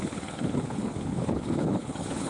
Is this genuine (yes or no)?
no